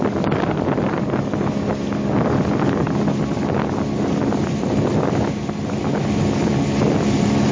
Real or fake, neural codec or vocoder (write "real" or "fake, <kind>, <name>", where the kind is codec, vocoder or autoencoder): real